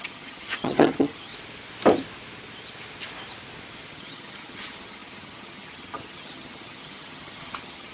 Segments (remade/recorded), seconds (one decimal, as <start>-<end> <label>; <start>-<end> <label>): 0.0-1.3 remade; 1.3-3.9 recorded; 3.9-7.9 remade